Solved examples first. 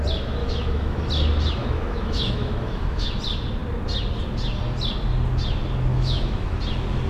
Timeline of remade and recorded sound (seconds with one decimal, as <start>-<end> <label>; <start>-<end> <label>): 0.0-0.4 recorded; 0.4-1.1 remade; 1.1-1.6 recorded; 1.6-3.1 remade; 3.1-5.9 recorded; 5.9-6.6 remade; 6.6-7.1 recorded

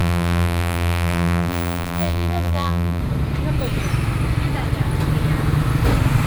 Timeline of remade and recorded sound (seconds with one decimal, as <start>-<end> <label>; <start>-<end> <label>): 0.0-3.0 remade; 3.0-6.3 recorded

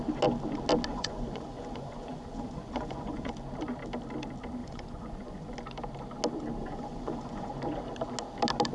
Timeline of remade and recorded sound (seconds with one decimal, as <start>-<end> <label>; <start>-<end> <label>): 0.0-0.9 recorded; 0.9-3.3 remade; 3.3-4.6 recorded; 4.6-5.5 remade; 5.5-6.6 recorded; 6.6-7.5 remade; 7.5-8.7 recorded

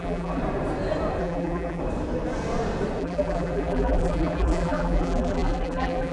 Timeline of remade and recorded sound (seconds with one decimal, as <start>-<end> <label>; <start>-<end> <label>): 0.0-0.4 remade; 0.4-1.2 recorded; 1.2-1.8 remade; 1.8-3.0 recorded; 3.0-6.1 remade

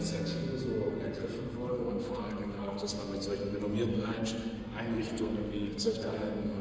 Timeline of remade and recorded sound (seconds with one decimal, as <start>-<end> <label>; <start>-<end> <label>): 0.0-1.7 recorded; 1.7-2.9 remade; 2.9-3.9 recorded; 3.9-4.6 remade; 4.6-5.1 recorded; 5.1-6.6 remade

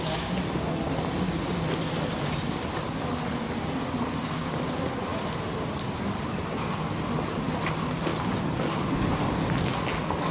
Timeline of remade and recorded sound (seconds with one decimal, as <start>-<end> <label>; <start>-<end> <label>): 0.0-10.3 recorded